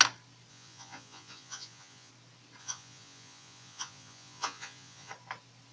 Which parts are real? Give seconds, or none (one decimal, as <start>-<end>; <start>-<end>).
0.0-0.5; 2.1-2.6; 5.1-5.7